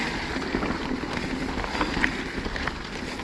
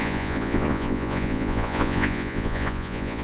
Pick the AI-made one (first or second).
second